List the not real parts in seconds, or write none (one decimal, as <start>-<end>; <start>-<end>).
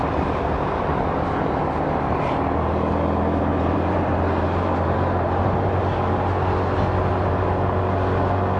0.0-1.0; 3.5-5.8